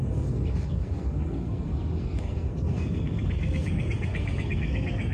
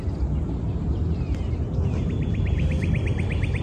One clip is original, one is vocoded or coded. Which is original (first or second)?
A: second